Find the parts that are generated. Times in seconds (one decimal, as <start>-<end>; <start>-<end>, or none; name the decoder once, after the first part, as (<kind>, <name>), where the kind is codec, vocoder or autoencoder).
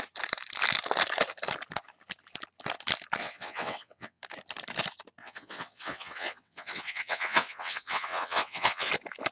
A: 3.2-4.2 (vocoder, WaveNeXt); 5.2-8.9